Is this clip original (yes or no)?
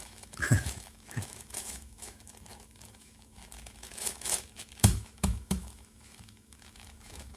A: no